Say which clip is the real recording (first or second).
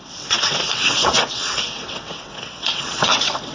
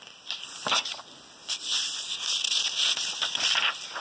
second